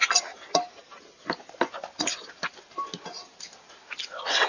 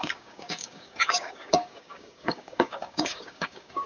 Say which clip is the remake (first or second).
second